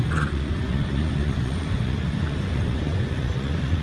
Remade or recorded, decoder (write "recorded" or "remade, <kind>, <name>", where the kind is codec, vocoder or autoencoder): remade, vocoder, Vocos